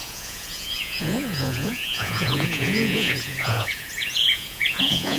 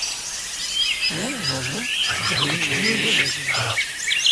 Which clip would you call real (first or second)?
second